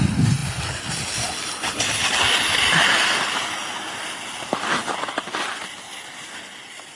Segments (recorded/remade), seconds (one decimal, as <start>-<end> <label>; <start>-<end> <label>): 0.0-7.0 recorded